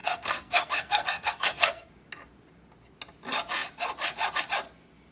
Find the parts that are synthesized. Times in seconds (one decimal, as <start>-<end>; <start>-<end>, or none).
0.0-1.9